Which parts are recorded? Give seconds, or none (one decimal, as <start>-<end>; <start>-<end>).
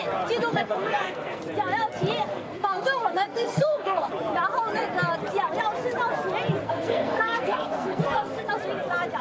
0.0-0.5; 1.4-2.3; 4.1-6.6; 8.5-9.2